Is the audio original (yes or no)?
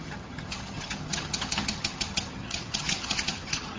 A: no